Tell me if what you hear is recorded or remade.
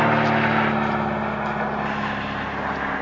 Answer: recorded